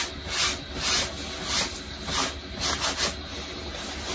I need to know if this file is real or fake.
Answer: real